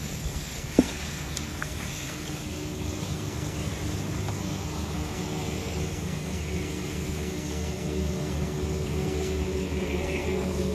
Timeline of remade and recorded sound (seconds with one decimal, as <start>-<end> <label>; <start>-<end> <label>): 0.0-3.7 remade; 3.7-4.3 recorded; 4.3-10.7 remade

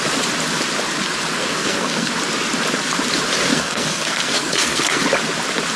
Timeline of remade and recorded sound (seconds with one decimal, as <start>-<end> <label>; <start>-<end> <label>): 0.0-1.4 recorded; 1.4-2.1 remade; 2.1-3.5 recorded; 3.5-5.0 remade; 5.0-5.8 recorded

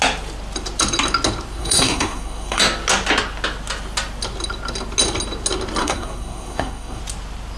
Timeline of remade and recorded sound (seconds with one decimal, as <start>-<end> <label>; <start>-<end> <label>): 0.0-1.6 recorded; 1.6-2.6 remade; 2.6-5.8 recorded; 5.8-7.0 remade; 7.0-7.6 recorded

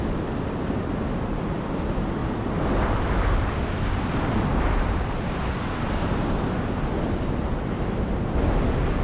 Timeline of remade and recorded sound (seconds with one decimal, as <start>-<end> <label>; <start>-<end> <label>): 0.0-9.0 recorded

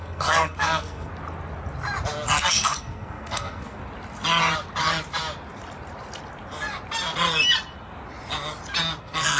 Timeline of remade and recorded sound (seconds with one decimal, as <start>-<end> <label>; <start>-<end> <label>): 0.0-1.1 remade; 1.1-2.3 recorded; 2.3-3.8 remade; 3.8-9.0 recorded; 9.0-9.4 remade

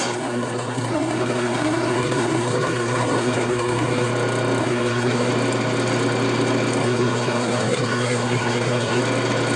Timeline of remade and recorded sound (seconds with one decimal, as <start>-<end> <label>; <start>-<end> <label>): 0.0-4.1 remade; 4.1-4.6 recorded; 4.6-5.3 remade; 5.3-6.8 recorded; 6.8-9.0 remade; 9.0-9.6 recorded